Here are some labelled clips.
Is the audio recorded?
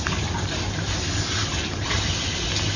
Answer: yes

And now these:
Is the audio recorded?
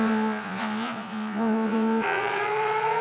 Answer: no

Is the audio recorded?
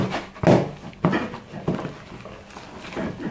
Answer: yes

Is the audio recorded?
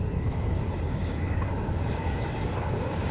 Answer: no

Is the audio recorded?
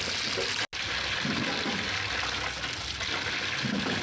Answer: yes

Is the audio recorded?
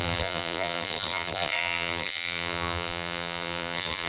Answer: no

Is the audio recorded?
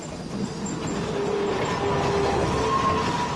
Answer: yes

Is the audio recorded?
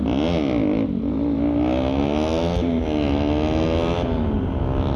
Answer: yes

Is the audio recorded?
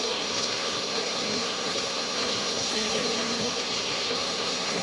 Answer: no